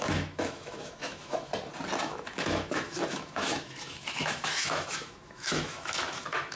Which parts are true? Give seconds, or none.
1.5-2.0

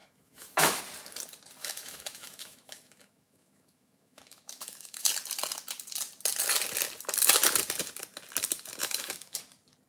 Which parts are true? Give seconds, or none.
0.8-1.6; 5.1-8.8; 9.4-9.9

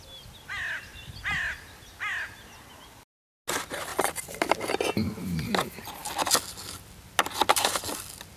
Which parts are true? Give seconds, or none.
0.0-8.4

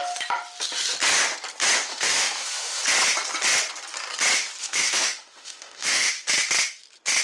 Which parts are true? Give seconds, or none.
0.0-1.9; 2.8-4.6; 6.1-7.2

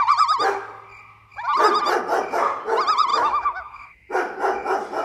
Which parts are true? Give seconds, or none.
0.0-3.1; 4.1-5.0

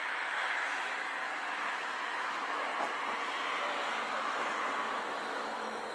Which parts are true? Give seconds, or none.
2.7-4.1